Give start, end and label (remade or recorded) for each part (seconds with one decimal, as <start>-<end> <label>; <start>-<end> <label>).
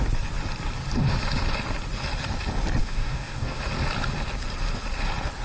0.0-2.8 recorded; 2.8-3.6 remade; 3.6-5.4 recorded